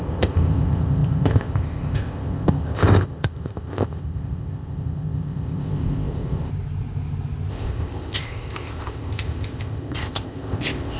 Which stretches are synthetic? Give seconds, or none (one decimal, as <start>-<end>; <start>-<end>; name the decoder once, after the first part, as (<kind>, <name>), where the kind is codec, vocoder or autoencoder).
0.0-6.5 (codec, ZipCodec); 7.5-11.0